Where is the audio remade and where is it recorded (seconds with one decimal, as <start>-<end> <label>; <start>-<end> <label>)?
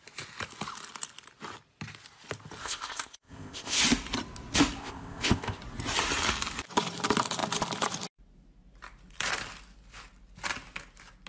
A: 0.0-2.6 recorded; 2.6-3.8 remade; 3.8-4.8 recorded; 4.8-5.6 remade; 5.6-11.3 recorded